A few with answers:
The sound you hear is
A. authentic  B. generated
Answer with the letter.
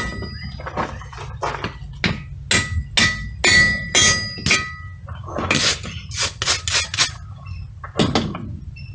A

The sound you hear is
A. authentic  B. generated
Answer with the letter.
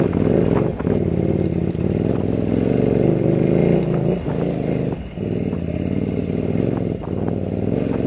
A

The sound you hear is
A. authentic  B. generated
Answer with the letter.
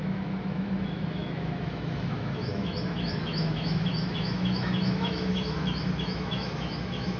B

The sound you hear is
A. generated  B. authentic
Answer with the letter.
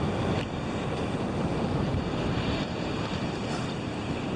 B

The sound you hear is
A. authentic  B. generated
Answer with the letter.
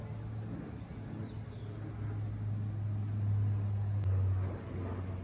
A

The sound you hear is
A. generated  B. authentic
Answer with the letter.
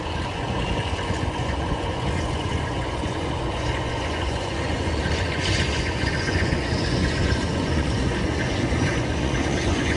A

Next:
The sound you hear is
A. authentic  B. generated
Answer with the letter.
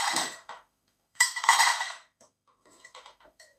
B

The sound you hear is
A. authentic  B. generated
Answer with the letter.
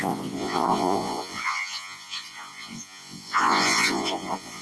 B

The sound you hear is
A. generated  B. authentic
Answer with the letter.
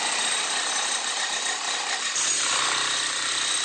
B